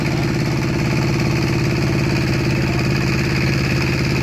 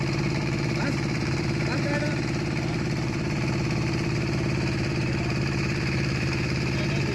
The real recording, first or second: first